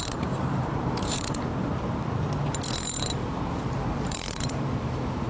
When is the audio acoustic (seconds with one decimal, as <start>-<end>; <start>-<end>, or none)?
1.7-3.1